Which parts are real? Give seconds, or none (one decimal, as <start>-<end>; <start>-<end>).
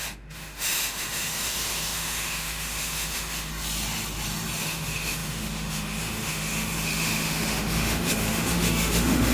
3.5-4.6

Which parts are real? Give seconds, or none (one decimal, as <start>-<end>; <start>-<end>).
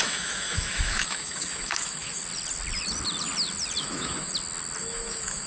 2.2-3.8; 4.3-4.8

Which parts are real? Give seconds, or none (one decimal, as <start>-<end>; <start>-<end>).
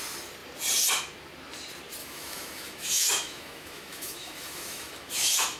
0.0-2.0